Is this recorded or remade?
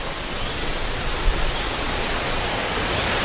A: remade